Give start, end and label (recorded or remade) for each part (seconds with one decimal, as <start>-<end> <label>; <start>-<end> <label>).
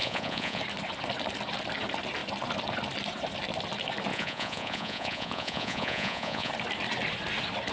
0.0-0.6 remade; 0.6-4.1 recorded; 4.1-6.5 remade; 6.5-7.7 recorded